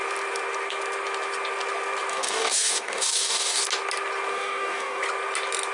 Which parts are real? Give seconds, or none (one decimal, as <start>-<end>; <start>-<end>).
0.0-2.1; 3.6-4.3; 5.0-5.7